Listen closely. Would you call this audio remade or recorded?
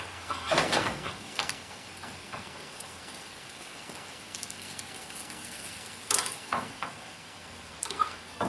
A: remade